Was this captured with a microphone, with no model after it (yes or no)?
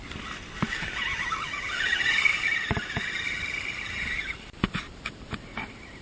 yes